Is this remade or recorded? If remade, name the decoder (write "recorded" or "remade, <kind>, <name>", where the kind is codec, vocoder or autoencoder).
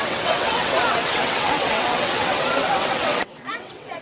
remade, vocoder, WaveNeXt